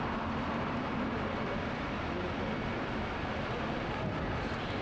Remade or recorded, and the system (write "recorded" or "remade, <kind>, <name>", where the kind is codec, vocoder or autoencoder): recorded